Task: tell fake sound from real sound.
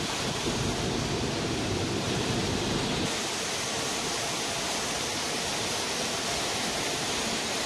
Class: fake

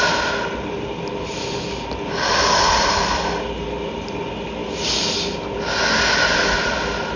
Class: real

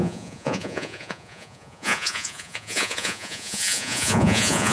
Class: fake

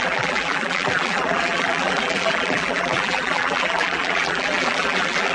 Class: fake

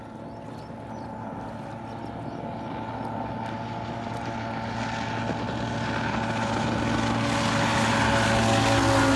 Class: real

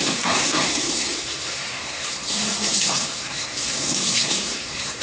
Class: fake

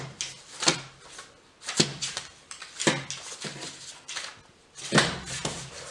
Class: real